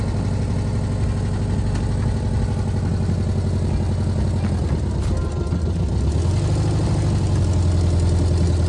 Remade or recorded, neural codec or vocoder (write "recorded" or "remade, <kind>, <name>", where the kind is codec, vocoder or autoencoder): recorded